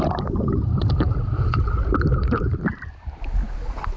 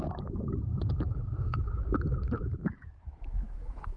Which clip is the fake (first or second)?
second